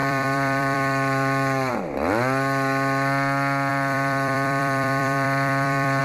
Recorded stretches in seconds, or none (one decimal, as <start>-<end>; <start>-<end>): 1.7-3.7